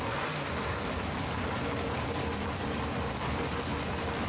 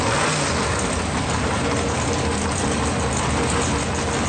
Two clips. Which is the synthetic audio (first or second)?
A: first